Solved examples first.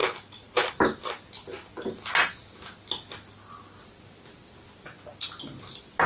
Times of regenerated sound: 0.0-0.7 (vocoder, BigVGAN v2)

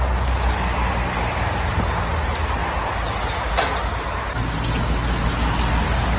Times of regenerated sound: none

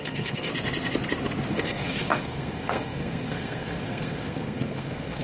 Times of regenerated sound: 0.0-0.5 (codec, SNAC); 1.5-5.2

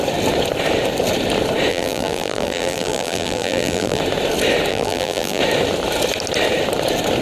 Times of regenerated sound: 1.7-4.0 (vocoder, BigVGAN v2); 4.7-5.4

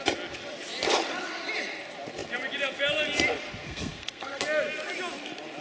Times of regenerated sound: 3.6-4.4 (codec, SNAC)